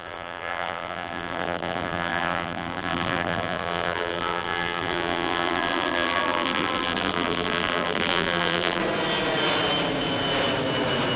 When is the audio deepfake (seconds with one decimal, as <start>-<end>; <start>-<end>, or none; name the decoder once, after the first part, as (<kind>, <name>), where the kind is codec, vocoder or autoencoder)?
0.0-8.8 (vocoder, BigVGAN v2)